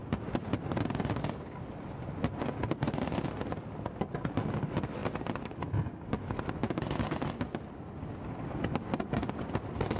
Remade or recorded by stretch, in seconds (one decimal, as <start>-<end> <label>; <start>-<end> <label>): 0.0-5.0 recorded; 5.0-5.9 remade; 5.9-10.0 recorded